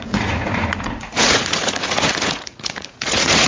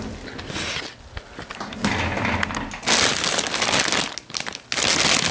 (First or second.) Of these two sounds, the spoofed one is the first